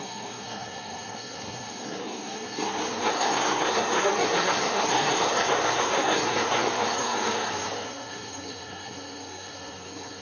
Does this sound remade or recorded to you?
remade